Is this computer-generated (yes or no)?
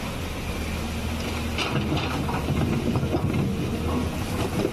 no